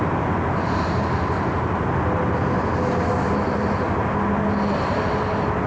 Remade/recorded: recorded